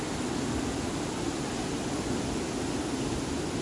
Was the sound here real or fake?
real